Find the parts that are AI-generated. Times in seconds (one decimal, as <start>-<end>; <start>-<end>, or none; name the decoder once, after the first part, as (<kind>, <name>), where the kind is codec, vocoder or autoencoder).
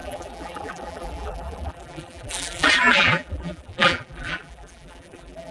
0.0-5.5 (vocoder, BigVGAN v2)